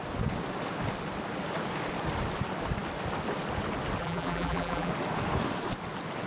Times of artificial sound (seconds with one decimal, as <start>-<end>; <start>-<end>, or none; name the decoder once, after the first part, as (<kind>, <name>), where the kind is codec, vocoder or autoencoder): 4.0-4.9 (vocoder, BigVGAN v2)